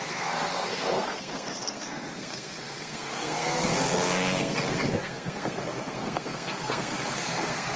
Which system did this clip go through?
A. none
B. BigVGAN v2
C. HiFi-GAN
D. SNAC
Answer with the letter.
D